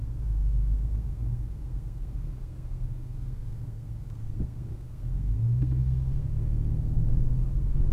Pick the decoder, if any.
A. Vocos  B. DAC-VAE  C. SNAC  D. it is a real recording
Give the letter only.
C